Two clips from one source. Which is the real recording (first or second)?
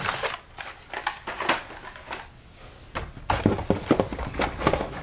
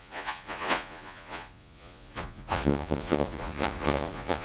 first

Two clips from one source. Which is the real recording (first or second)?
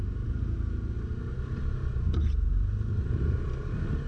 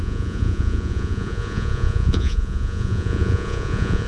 first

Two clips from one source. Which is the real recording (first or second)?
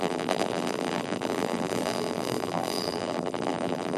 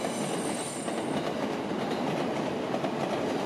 second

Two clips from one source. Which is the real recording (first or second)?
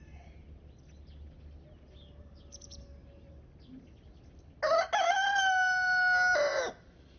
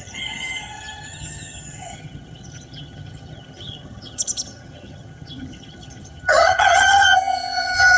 first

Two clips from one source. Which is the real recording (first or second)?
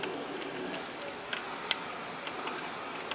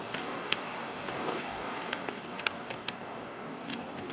first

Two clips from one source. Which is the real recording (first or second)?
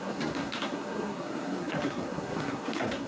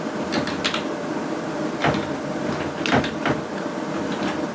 second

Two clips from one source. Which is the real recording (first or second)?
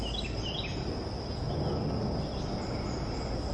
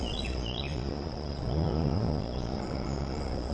first